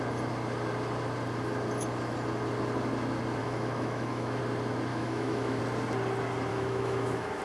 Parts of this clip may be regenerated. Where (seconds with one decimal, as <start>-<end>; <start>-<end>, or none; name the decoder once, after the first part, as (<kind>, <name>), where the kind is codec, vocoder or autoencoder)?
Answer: 3.4-4.4 (autoencoder, DAC-VAE); 4.9-5.6; 6.5-7.4